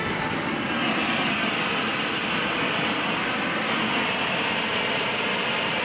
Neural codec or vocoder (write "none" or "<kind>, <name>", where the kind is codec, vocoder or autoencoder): none